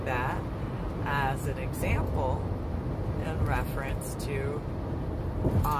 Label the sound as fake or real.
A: real